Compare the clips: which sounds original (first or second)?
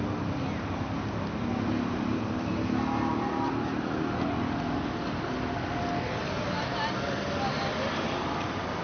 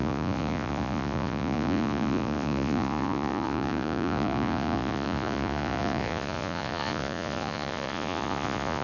first